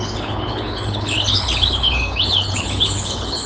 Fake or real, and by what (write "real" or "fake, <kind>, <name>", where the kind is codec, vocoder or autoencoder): fake, codec, HILCodec